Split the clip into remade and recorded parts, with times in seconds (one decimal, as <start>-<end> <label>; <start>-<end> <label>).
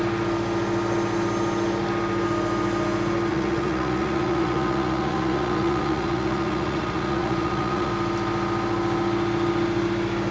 0.0-3.3 recorded; 3.3-7.9 remade; 7.9-10.3 recorded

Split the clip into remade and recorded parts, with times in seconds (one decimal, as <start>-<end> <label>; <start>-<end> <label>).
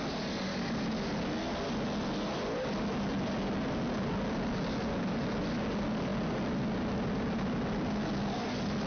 0.0-8.9 recorded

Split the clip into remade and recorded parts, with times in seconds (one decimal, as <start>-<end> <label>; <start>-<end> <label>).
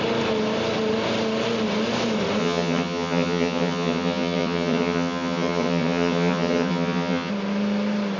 0.0-2.4 recorded; 2.4-7.3 remade; 7.3-8.2 recorded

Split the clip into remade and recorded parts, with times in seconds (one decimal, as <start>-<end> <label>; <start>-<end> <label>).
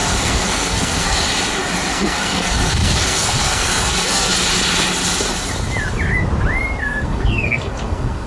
0.0-1.2 remade; 1.2-1.9 recorded; 1.9-4.3 remade; 4.3-6.8 recorded; 6.8-8.3 remade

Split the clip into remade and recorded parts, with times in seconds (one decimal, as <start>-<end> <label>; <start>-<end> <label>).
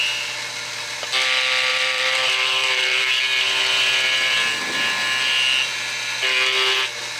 0.0-1.7 recorded; 1.7-3.1 remade; 3.1-7.2 recorded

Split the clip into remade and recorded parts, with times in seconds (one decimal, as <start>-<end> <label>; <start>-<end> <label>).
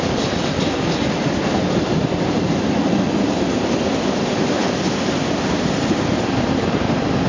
0.0-7.3 recorded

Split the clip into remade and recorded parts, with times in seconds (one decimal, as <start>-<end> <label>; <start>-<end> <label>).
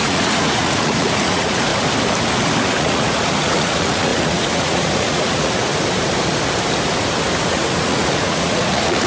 0.0-1.7 remade; 1.7-2.7 recorded; 2.7-5.7 remade; 5.7-7.5 recorded; 7.5-9.1 remade